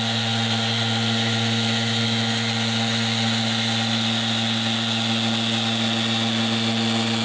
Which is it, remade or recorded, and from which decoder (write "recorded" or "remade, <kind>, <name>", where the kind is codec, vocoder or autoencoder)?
recorded